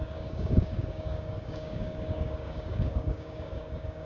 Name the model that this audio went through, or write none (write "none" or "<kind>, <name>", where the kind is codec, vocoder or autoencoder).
codec, DAC